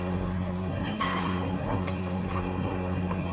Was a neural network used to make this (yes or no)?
yes